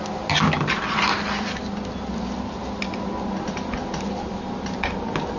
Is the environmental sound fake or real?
real